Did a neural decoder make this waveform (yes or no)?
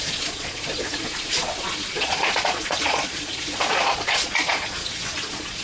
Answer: yes